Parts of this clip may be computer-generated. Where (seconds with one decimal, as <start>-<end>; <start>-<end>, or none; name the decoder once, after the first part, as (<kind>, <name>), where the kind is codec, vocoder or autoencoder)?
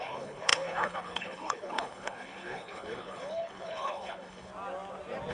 0.0-4.5 (codec, HILCodec)